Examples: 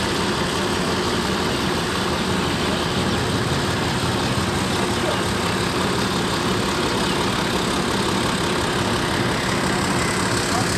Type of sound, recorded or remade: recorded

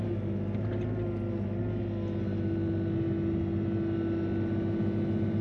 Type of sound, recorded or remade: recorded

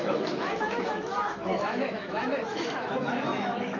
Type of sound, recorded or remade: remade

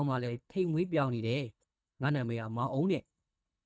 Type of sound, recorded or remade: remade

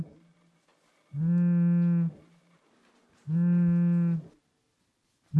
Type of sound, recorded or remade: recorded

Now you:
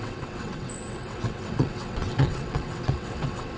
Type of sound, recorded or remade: remade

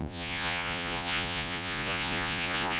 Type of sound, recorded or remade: remade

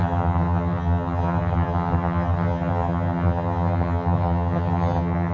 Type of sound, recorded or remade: remade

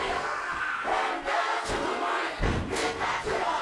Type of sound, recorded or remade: remade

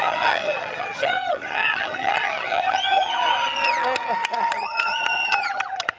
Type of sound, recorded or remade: remade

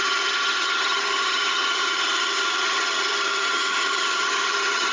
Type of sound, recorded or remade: remade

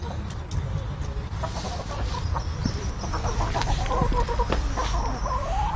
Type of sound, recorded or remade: recorded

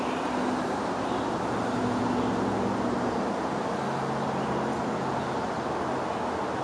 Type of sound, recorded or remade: recorded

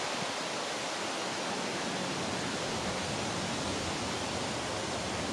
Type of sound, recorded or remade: recorded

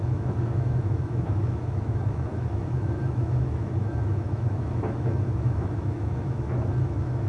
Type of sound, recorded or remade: remade